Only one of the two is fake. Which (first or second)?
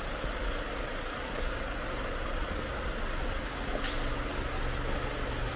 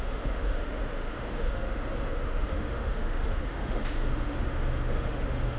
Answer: second